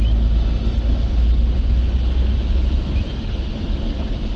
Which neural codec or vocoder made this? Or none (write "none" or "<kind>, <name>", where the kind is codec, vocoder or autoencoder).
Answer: none